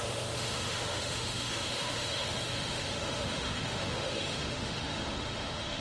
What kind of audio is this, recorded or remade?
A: remade